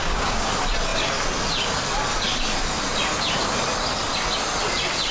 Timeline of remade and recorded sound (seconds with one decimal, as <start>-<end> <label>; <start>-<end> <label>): 0.0-0.5 remade; 0.5-5.1 recorded